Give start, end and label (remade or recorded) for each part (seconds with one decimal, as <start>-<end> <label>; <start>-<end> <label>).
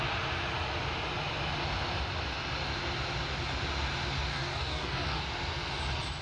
0.0-4.3 recorded; 4.3-5.2 remade; 5.2-6.2 recorded